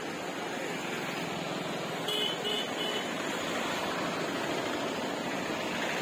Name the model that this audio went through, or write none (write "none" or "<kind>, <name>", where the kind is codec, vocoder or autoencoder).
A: none